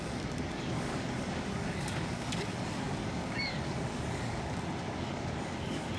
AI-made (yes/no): yes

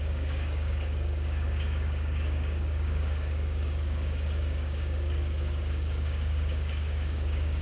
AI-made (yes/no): yes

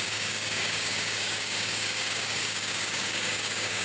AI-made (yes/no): yes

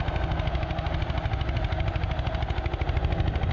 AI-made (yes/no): no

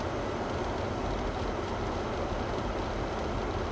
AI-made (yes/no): no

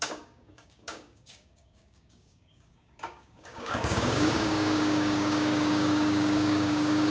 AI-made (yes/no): yes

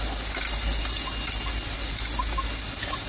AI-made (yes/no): no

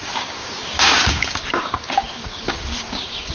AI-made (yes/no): yes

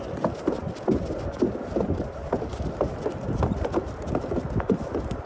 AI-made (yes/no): no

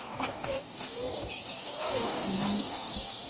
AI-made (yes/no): yes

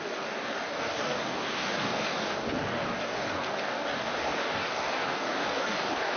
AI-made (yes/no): yes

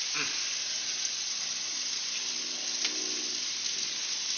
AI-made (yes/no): no